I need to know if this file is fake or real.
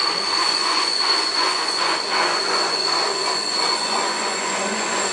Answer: fake